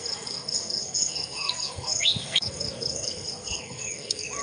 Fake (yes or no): yes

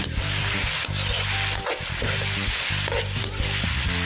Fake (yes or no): no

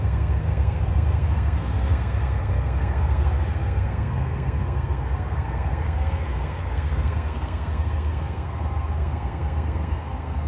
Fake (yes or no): yes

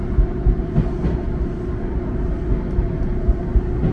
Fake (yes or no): no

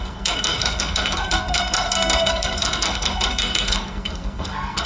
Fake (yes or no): yes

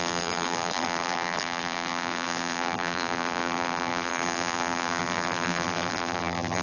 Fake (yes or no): yes